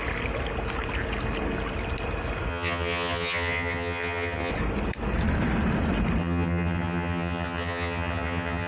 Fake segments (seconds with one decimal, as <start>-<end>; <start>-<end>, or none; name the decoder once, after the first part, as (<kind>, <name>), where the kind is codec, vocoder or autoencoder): 2.5-4.5 (vocoder, HiFi-GAN); 6.2-8.7